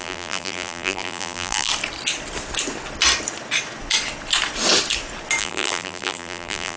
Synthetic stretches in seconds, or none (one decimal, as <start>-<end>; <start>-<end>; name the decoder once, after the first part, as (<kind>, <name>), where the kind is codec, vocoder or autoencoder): 0.0-1.7 (vocoder, BigVGAN v2); 5.4-6.8